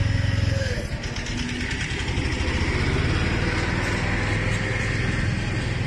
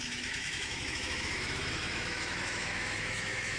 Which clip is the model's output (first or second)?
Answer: second